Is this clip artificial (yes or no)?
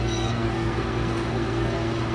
yes